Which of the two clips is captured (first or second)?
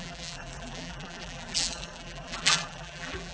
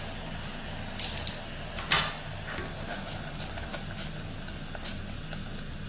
second